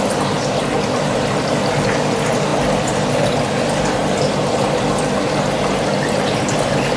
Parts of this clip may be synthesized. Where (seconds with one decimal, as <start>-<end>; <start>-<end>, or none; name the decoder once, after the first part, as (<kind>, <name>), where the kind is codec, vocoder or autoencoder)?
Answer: 4.0-4.8 (vocoder, BigVGAN v2)